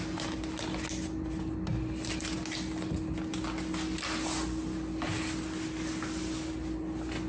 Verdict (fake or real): real